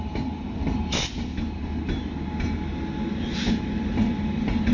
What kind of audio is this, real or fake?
real